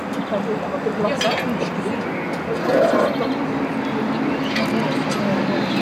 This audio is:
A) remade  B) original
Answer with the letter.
B